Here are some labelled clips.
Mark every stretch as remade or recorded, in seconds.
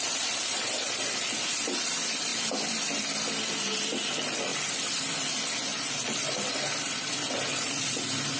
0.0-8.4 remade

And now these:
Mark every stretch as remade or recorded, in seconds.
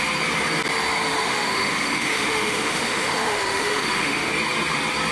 0.0-1.2 recorded; 1.2-4.3 remade; 4.3-5.1 recorded